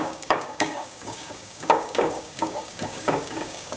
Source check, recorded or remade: remade